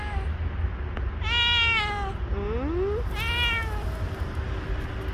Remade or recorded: recorded